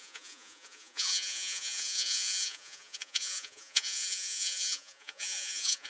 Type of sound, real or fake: fake